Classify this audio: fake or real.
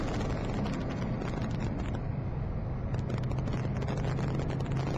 real